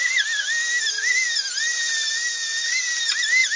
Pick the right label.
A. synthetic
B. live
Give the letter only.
B